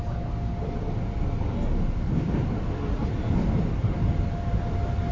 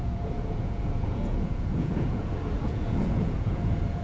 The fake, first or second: second